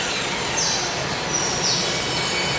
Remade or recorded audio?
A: recorded